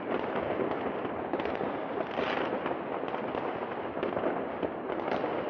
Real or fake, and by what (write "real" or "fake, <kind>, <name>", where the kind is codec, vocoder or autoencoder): real